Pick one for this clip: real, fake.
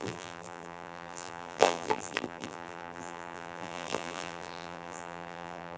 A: fake